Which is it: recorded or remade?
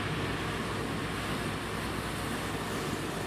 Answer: recorded